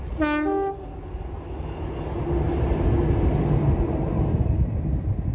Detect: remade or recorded recorded